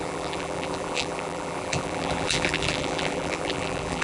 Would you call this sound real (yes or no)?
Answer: no